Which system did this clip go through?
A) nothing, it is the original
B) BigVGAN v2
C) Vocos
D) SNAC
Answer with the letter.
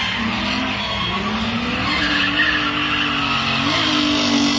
A